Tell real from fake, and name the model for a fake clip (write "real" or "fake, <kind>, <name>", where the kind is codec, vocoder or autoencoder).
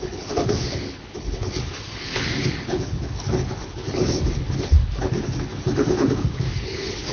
fake, codec, HILCodec